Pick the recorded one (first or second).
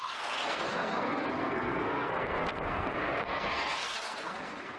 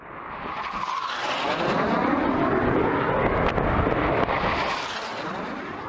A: second